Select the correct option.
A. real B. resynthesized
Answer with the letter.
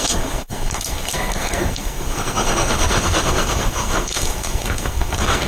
B